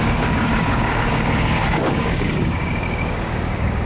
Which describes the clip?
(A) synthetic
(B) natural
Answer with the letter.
A